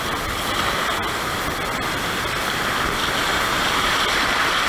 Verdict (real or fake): real